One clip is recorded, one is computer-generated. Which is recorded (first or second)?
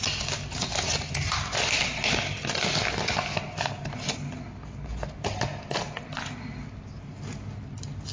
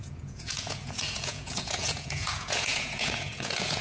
first